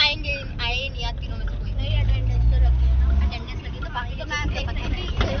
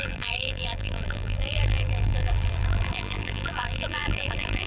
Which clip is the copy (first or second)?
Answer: second